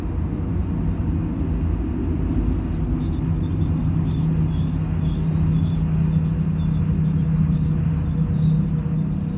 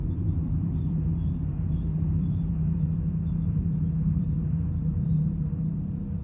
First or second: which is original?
first